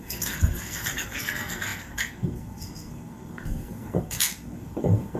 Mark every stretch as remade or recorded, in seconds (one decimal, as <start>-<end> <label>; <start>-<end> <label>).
0.0-5.2 remade